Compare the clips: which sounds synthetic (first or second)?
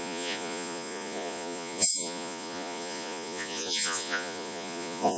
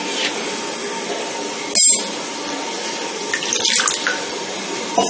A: first